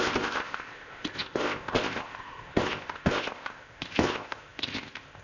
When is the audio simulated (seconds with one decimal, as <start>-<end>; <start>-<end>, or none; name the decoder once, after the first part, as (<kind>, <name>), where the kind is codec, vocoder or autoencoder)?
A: 0.0-5.2 (codec, ZipCodec)